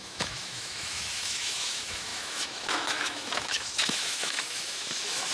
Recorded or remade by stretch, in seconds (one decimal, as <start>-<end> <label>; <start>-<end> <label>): 0.0-5.3 remade